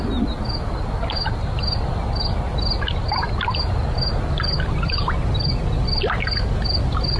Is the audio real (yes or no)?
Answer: yes